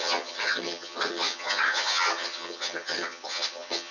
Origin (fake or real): fake